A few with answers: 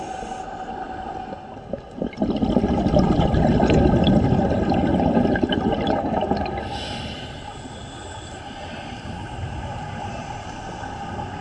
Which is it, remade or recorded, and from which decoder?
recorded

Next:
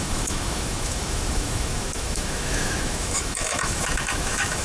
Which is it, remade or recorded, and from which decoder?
remade, autoencoder, DAC-VAE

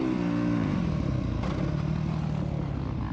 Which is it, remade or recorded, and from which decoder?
recorded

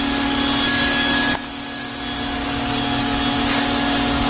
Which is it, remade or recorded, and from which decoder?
recorded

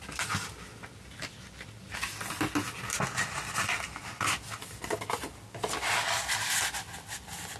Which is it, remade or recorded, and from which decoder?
recorded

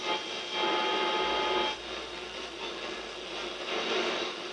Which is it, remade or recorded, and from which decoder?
recorded